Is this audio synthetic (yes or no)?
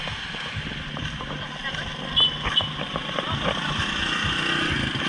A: no